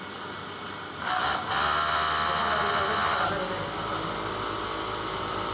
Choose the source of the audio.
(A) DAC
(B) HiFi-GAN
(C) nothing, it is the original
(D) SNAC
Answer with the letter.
C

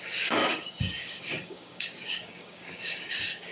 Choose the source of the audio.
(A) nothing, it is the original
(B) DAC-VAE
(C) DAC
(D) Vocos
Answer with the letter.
C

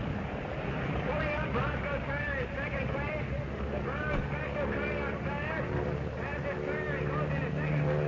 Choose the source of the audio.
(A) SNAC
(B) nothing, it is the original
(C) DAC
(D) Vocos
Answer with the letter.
B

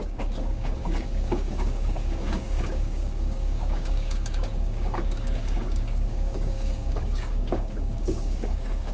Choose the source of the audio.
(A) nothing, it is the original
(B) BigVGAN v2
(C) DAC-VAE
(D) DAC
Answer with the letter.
D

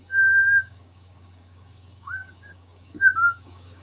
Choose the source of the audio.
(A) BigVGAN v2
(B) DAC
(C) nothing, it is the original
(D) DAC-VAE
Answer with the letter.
B